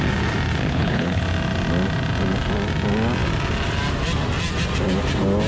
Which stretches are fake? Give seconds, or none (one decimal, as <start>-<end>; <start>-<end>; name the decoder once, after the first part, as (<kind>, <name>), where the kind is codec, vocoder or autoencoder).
0.7-1.2 (codec, HILCodec)